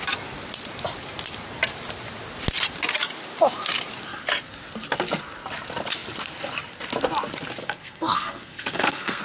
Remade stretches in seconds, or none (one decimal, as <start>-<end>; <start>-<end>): 7.6-9.2